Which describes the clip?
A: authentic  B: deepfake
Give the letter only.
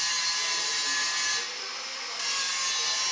A